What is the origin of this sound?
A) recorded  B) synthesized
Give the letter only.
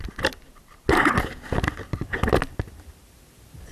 A